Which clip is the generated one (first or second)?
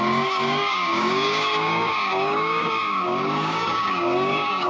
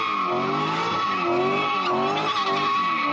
first